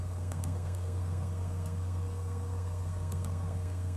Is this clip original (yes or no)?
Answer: no